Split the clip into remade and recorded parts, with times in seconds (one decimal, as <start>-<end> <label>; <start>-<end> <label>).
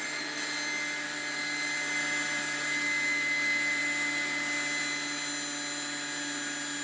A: 0.0-6.8 recorded